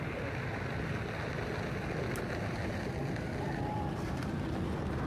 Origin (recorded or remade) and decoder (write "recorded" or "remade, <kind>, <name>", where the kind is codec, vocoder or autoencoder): recorded